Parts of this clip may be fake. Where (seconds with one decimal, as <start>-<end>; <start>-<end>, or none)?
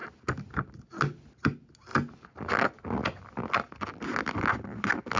none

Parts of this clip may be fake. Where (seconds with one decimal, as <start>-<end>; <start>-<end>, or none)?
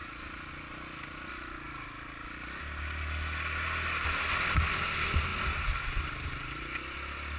none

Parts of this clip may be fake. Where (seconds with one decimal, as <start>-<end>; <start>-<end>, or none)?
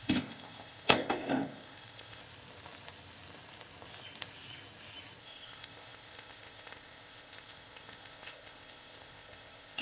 0.0-2.2; 5.2-9.8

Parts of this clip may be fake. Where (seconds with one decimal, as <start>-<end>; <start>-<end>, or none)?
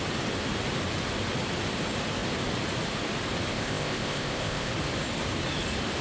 3.5-4.7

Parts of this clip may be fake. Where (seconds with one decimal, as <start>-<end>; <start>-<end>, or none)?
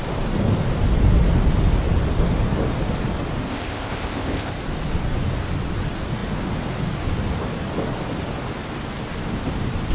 3.5-4.5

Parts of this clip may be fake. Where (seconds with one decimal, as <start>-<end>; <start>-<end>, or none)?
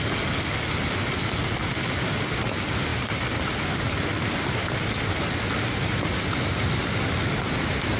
none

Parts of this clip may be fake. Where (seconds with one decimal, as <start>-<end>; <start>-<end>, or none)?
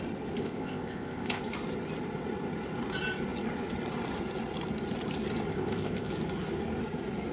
0.4-1.4; 5.5-6.1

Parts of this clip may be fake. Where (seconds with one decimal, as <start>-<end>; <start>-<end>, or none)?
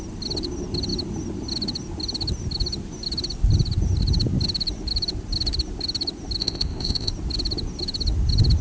6.4-7.1